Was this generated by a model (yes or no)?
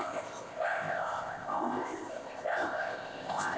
yes